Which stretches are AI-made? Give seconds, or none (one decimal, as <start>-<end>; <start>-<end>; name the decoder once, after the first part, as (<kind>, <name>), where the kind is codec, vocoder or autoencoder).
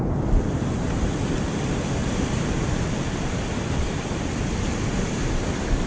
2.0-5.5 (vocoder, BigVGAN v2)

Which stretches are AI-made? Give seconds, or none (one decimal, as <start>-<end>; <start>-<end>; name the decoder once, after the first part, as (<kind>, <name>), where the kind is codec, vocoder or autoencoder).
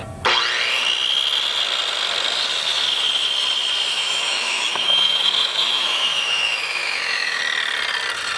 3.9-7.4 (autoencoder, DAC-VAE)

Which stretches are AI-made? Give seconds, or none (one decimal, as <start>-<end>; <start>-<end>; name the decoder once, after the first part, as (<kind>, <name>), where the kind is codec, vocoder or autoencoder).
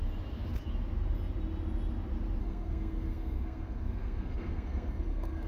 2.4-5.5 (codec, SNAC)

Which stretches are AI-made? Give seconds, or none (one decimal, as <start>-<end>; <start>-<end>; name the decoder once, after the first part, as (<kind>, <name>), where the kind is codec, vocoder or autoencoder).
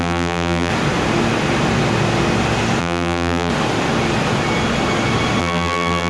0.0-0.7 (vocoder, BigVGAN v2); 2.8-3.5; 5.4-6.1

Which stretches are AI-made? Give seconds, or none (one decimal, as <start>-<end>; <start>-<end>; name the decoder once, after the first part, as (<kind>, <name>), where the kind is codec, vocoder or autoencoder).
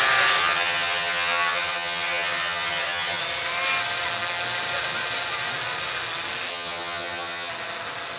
0.4-3.2 (vocoder, HiFi-GAN); 6.5-7.5